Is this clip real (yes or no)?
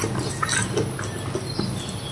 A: yes